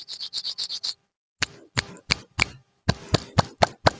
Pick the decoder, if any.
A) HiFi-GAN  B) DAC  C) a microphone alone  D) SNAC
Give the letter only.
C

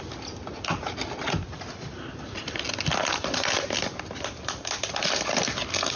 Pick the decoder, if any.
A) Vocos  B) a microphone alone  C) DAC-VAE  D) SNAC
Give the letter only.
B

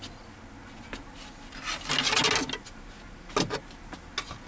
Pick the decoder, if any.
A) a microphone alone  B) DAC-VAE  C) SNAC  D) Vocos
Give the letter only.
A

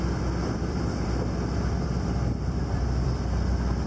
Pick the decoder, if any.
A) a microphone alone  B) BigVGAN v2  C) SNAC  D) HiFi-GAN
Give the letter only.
B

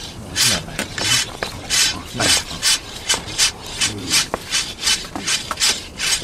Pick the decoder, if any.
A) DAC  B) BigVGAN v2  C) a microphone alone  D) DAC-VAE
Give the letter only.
B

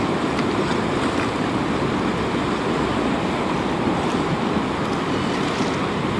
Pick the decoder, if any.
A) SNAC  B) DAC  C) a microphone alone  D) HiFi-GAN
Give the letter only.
C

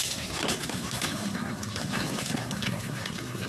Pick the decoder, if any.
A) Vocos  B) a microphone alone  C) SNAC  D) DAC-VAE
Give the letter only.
C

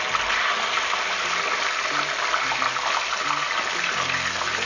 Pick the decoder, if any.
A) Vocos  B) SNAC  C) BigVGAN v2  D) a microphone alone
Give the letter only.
D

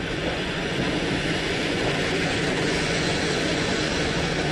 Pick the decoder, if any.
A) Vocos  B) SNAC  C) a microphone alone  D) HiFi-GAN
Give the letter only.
A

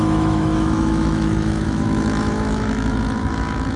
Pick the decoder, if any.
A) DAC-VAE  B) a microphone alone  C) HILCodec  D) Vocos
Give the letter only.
A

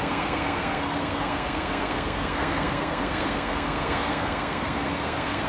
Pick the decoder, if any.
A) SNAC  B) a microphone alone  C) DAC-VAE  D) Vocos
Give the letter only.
A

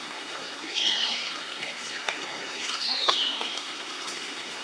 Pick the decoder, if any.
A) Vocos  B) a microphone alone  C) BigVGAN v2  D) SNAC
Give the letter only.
D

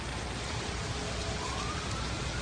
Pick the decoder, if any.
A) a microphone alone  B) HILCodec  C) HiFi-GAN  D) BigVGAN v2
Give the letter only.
A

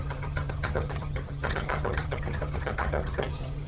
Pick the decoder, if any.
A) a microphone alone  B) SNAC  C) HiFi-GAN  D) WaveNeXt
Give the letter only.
C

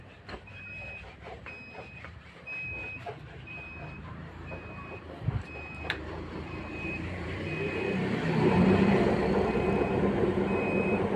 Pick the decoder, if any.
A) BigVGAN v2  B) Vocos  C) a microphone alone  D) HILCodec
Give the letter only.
A